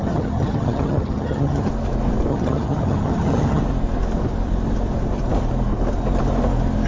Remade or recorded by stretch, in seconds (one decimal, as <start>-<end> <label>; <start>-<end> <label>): 0.0-1.7 remade; 1.7-2.3 recorded; 2.3-3.6 remade; 3.6-6.9 recorded